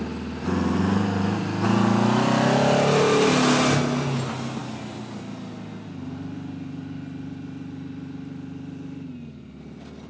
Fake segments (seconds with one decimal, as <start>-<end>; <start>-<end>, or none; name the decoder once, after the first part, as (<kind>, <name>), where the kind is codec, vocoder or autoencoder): none